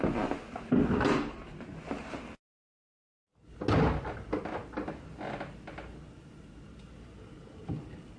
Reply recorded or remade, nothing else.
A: recorded